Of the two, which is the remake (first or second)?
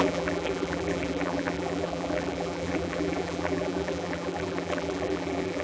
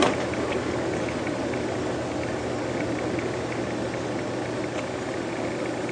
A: first